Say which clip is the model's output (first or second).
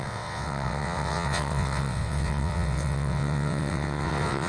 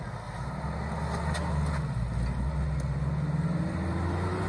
first